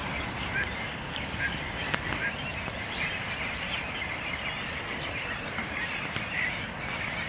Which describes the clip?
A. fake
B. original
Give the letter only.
B